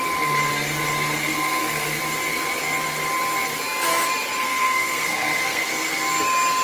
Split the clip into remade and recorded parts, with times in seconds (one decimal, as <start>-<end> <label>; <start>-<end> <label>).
0.0-1.3 recorded; 1.3-2.0 remade; 2.0-4.4 recorded; 4.4-5.6 remade; 5.6-6.6 recorded